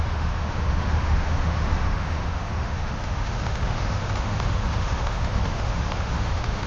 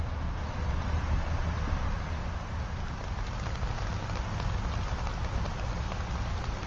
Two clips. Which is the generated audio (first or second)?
first